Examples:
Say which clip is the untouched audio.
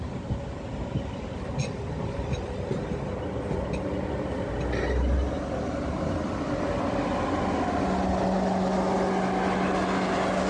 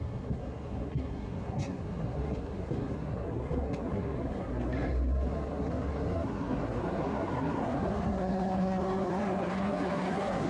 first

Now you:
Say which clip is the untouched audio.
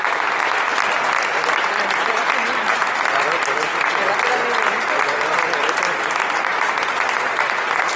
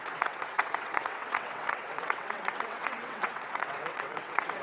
first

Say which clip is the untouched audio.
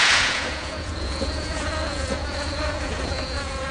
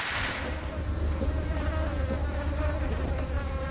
second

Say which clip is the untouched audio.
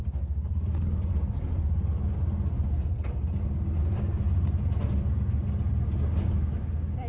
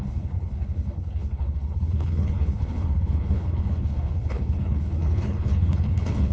first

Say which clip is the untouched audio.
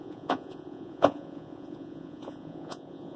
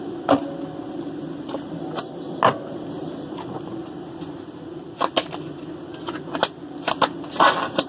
second